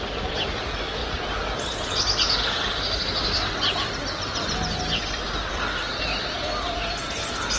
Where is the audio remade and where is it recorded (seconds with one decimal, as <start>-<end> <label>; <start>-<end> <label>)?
0.0-7.6 recorded